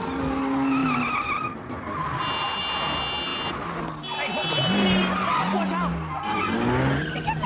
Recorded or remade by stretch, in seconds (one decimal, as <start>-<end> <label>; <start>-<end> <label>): 0.0-7.5 recorded